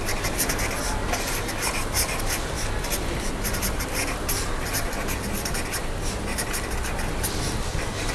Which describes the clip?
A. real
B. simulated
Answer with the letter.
A